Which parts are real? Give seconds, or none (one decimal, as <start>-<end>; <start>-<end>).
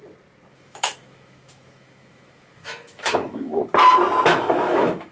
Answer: 0.0-0.5; 3.6-4.3